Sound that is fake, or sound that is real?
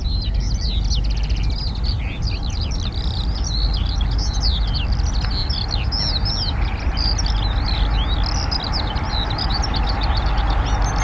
real